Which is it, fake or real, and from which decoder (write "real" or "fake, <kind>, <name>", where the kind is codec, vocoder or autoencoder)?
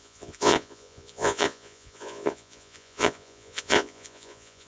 fake, vocoder, Vocos